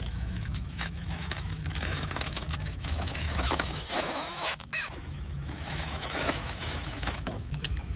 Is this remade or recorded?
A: remade